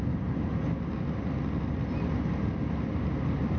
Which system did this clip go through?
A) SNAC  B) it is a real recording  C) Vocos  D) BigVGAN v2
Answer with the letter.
B